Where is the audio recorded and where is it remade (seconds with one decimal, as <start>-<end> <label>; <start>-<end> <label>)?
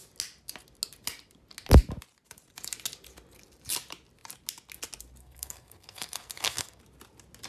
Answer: 0.0-5.2 recorded; 5.2-6.8 remade; 6.8-7.5 recorded